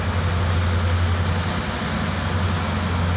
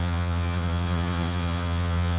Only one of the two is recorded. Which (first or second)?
first